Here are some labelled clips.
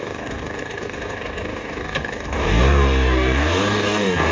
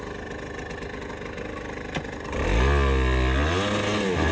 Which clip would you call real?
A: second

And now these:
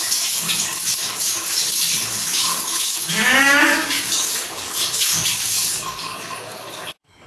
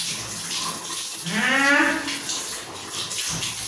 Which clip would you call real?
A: second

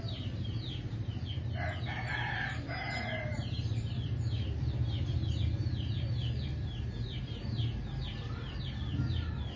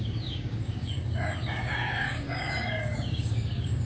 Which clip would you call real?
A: first